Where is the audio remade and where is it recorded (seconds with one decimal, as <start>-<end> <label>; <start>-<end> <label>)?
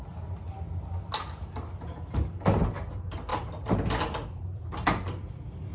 0.0-5.7 recorded